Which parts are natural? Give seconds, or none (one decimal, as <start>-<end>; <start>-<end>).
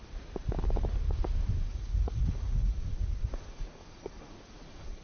0.0-1.7